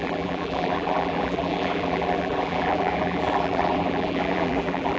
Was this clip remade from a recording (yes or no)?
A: yes